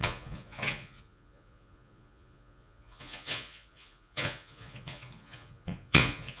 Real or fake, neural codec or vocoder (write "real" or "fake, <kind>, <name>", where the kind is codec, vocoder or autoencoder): fake, vocoder, Vocos